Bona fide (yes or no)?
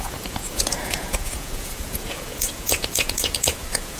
no